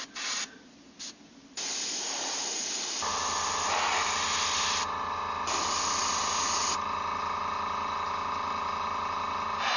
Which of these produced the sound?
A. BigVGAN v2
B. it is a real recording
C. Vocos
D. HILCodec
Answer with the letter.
B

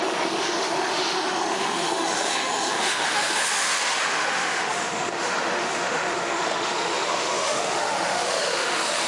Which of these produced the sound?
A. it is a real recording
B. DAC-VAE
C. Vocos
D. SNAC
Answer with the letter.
B